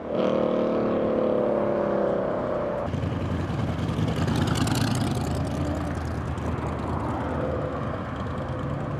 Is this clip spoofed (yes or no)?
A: no